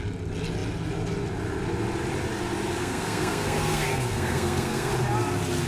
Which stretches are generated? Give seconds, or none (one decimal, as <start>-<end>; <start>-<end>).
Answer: 2.8-4.9